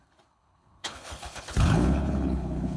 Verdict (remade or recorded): remade